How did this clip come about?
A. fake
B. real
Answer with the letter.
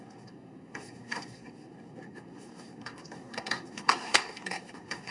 A